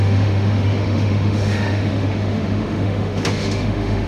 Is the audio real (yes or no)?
no